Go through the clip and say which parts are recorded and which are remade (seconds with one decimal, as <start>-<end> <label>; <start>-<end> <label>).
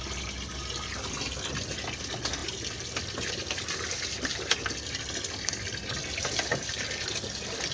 0.0-2.4 recorded; 2.4-6.0 remade; 6.0-7.7 recorded